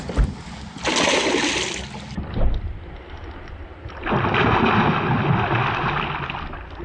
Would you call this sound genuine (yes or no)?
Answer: yes